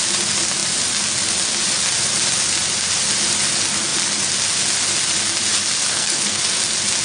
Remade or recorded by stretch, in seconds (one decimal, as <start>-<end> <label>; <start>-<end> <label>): 0.0-5.9 recorded; 5.9-6.4 remade; 6.4-7.0 recorded